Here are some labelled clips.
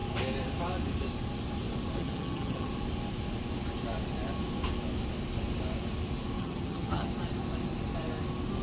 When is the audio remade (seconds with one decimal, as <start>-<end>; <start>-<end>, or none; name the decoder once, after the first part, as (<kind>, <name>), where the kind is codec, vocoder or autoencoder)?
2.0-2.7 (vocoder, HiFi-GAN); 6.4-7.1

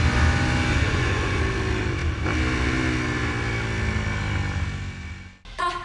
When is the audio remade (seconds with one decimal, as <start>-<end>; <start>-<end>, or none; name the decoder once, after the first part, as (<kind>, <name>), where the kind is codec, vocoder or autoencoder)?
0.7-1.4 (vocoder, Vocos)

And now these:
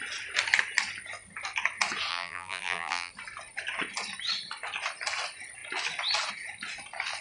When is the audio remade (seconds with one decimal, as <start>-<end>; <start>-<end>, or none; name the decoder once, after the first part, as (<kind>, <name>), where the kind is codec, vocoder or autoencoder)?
2.1-3.1 (vocoder, BigVGAN v2)

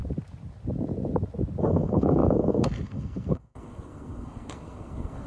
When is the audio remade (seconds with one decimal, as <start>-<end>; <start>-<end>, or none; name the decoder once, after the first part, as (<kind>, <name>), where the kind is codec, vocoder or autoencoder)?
1.6-5.3 (codec, SNAC)